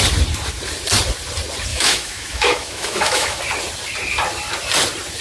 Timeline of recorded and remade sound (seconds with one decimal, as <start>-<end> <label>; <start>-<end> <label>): 0.0-1.7 recorded; 1.7-3.4 remade; 3.4-5.2 recorded

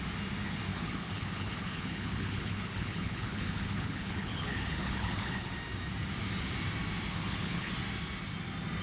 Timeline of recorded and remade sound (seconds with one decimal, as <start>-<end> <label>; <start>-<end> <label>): 0.0-0.7 recorded; 0.7-5.5 remade; 5.5-7.1 recorded; 7.1-7.7 remade; 7.7-8.8 recorded

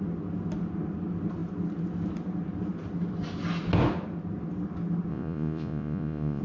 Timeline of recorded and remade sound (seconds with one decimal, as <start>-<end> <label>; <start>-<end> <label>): 0.0-5.1 recorded; 5.1-6.4 remade

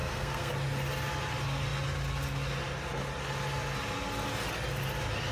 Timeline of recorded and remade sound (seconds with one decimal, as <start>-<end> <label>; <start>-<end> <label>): 0.0-0.5 remade; 0.5-5.3 recorded

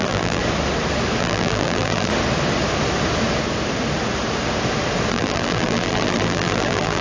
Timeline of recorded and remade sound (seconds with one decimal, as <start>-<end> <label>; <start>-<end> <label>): 0.0-0.4 remade; 0.4-1.2 recorded; 1.2-2.1 remade; 2.1-5.1 recorded; 5.1-7.0 remade

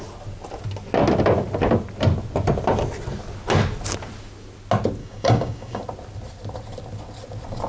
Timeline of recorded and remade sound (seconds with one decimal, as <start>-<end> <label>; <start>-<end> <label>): 0.0-5.0 recorded; 5.0-5.8 remade; 5.8-7.7 recorded